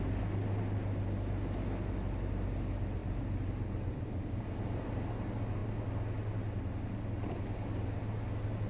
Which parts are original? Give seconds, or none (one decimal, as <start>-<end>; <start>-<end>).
0.0-3.0; 4.0-8.7